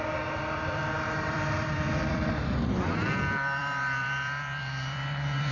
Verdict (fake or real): fake